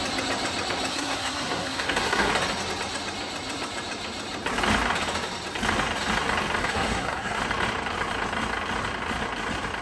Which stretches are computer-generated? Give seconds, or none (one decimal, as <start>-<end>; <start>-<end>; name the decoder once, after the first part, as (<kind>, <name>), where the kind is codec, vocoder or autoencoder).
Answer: 0.9-2.3 (codec, SNAC); 6.6-7.4